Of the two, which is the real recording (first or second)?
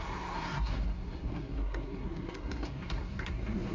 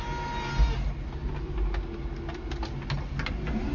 second